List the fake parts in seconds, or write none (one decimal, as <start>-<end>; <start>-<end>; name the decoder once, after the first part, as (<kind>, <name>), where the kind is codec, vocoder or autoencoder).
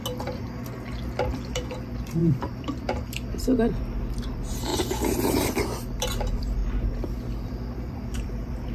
1.3-6.6 (vocoder, BigVGAN v2); 7.3-8.7